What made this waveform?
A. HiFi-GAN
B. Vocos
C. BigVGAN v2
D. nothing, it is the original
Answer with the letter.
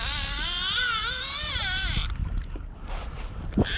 C